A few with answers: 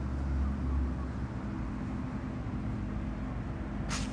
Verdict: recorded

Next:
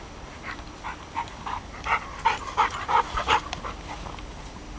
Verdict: recorded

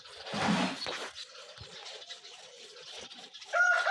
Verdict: recorded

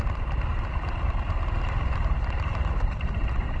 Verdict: recorded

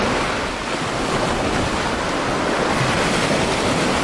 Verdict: recorded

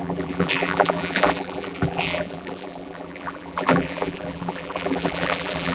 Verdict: remade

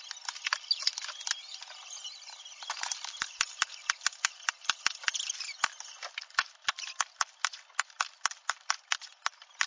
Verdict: recorded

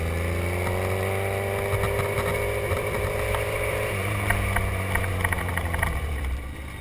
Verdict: recorded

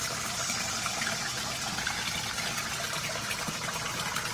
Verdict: recorded